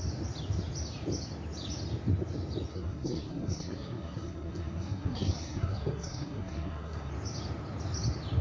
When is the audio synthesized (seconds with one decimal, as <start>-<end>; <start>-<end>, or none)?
2.7-7.1